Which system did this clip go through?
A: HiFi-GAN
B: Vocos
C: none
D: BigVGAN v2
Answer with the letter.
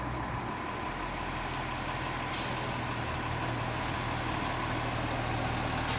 C